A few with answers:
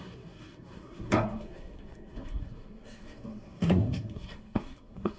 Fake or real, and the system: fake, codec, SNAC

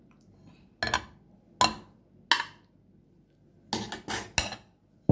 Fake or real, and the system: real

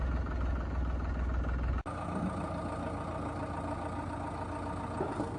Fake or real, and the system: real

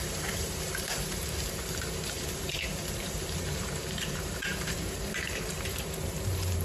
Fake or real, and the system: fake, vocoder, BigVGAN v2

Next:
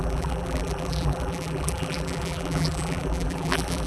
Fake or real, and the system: fake, vocoder, BigVGAN v2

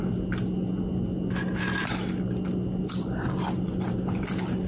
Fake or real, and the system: real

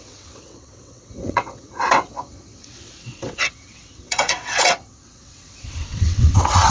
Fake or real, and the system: fake, vocoder, WaveNeXt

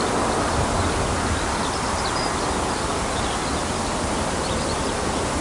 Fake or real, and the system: real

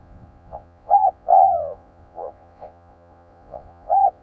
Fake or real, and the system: fake, vocoder, Vocos